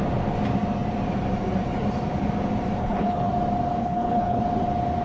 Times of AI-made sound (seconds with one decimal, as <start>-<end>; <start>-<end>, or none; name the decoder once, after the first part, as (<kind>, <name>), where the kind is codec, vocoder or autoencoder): 2.8-3.3 (codec, HILCodec); 3.8-4.4

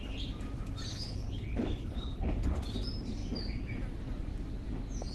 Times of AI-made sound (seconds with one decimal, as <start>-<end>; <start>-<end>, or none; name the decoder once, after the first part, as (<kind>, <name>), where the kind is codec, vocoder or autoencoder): 0.9-2.3 (codec, HILCodec)

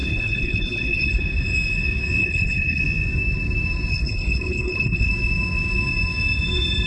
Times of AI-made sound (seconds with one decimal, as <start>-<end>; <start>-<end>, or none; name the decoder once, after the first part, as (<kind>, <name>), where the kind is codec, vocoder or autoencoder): 0.0-1.2 (codec, HILCodec); 2.2-2.8; 3.9-5.1

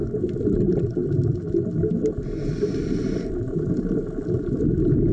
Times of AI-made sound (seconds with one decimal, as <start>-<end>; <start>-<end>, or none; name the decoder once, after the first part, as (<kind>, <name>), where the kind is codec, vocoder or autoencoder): none

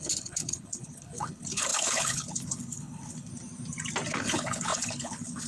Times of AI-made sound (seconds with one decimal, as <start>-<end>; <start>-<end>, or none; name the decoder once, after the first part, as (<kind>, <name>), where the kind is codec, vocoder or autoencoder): 0.0-3.3 (codec, HILCodec); 4.1-5.5

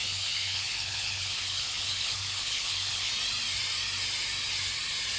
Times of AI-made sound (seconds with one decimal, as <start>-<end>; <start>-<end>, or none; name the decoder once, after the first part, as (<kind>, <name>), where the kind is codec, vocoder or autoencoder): 0.0-3.1 (codec, HILCodec)